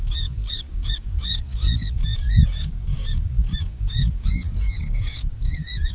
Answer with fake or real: fake